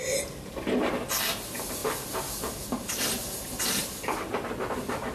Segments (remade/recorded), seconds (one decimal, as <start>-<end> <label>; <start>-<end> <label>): 0.0-5.1 recorded